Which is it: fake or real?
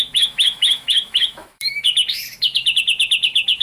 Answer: fake